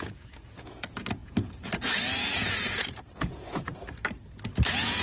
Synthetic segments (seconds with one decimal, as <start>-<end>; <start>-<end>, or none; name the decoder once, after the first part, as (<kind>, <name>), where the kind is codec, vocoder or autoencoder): 0.0-5.0 (vocoder, Vocos)